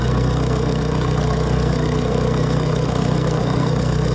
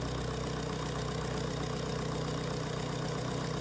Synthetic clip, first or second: first